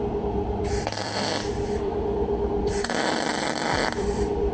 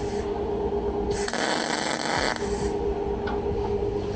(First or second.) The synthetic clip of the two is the first